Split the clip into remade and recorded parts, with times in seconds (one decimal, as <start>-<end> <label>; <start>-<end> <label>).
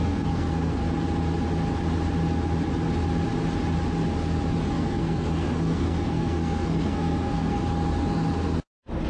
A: 0.0-0.8 remade; 0.8-4.7 recorded; 4.7-7.6 remade; 7.6-9.1 recorded